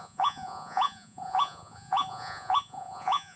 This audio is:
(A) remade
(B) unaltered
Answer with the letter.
A